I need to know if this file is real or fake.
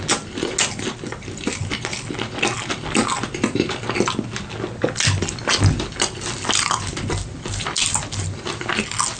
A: real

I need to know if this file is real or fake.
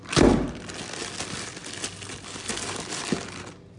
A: real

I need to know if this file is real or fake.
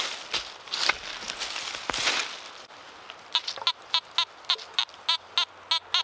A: real